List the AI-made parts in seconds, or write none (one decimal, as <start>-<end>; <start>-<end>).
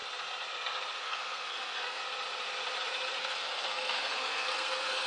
1.0-2.0; 3.2-5.1